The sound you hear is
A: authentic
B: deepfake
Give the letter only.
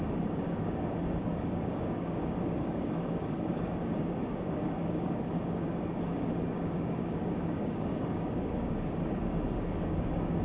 B